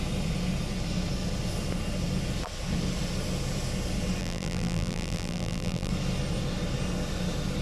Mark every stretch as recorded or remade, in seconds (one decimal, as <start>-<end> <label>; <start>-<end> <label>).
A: 0.0-4.2 recorded; 4.2-5.9 remade; 5.9-7.6 recorded